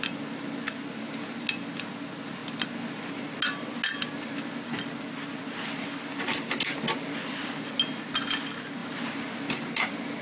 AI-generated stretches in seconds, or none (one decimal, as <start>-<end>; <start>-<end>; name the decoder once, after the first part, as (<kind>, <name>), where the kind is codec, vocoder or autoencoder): none